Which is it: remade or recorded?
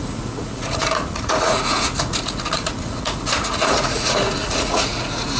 remade